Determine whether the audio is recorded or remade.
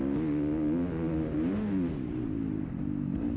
recorded